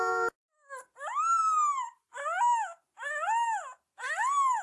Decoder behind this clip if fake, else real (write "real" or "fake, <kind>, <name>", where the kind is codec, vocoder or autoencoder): real